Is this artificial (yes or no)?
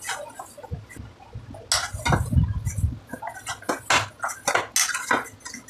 no